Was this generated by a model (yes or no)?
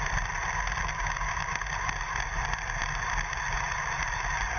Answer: no